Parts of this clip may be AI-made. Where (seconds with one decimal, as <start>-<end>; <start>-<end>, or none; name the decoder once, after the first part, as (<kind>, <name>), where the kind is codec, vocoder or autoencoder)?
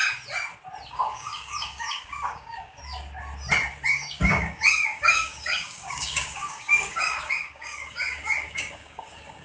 0.9-2.8 (codec, DAC); 3.9-9.4